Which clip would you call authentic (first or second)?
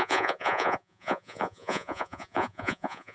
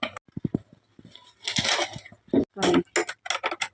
second